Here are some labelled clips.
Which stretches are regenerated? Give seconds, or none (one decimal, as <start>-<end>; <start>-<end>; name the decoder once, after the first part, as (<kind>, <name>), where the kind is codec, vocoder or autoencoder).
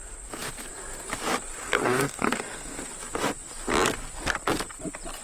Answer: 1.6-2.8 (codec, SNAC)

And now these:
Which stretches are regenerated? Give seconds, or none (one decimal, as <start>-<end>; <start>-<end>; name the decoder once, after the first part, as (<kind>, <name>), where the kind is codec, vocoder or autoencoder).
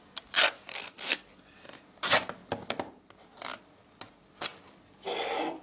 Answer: 0.7-1.2 (codec, SNAC)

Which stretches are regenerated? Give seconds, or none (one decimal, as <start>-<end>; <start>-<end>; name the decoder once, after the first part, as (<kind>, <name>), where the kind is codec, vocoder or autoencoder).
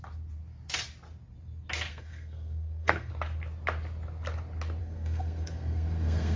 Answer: 1.9-3.1 (codec, SNAC); 4.8-6.4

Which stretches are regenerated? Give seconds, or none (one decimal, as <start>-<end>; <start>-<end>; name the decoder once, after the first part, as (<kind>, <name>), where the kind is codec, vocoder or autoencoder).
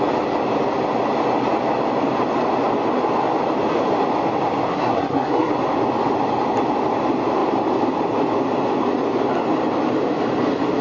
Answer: 4.7-5.5 (codec, SNAC)